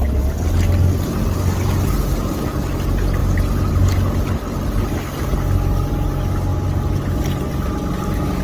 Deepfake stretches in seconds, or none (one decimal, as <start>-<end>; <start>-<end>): none